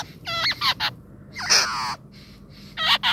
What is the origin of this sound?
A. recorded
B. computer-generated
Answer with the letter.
A